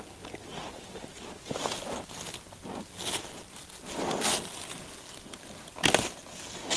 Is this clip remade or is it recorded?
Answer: recorded